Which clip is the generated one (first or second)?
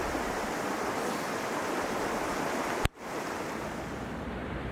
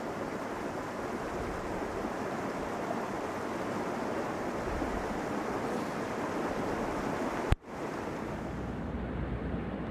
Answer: first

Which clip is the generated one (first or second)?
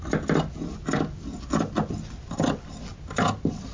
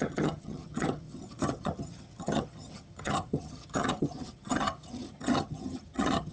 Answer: second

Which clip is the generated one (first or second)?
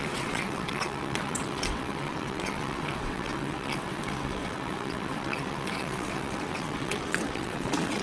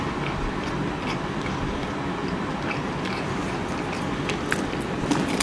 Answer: first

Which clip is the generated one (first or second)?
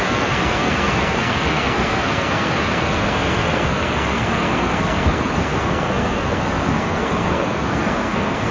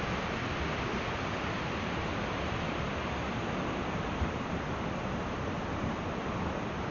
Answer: first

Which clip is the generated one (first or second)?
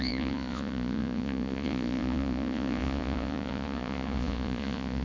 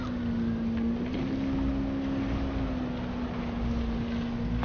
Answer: first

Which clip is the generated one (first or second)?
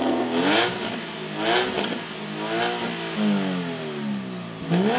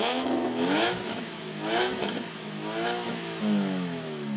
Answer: second